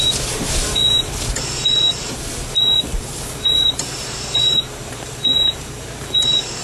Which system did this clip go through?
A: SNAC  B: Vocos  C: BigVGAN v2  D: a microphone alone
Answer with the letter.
C